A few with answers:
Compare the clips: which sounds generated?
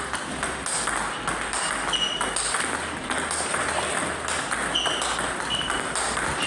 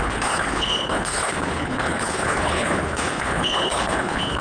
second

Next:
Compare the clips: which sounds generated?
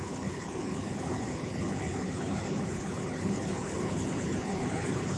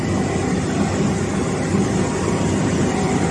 first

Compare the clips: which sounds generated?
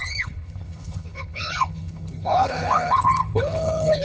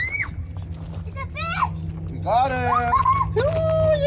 first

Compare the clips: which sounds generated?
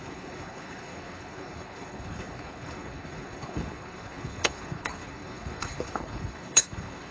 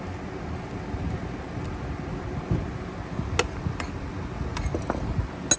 first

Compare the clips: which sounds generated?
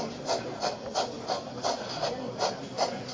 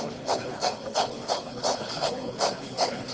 second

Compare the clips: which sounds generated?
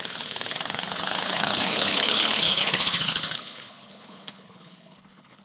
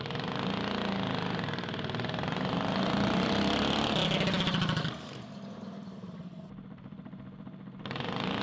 first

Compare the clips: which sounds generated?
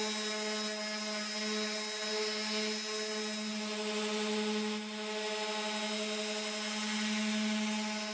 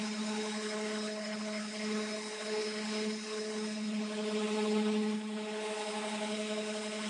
second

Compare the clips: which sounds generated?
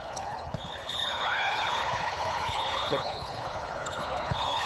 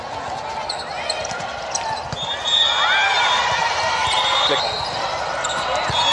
first